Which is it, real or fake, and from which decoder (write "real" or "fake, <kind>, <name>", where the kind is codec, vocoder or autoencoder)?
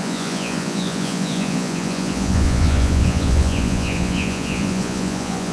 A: fake, vocoder, Vocos